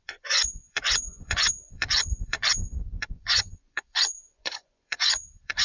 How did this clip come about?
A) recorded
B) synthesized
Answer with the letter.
B